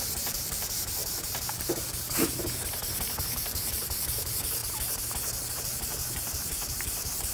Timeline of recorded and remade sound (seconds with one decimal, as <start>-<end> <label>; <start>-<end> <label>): 0.0-2.6 remade; 2.6-3.3 recorded; 3.3-4.6 remade; 4.6-5.5 recorded; 5.5-7.3 remade